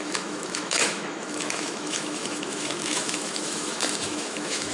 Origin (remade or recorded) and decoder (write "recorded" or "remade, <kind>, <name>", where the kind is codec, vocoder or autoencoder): remade, autoencoder, DAC-VAE